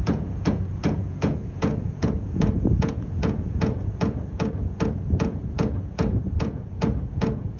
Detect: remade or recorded remade